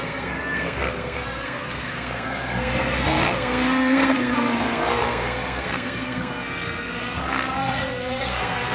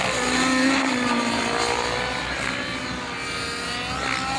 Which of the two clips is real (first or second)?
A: second